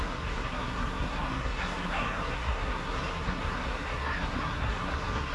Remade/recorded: remade